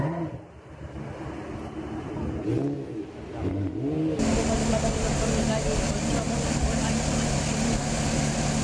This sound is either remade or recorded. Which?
recorded